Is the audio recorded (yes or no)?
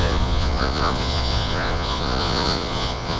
no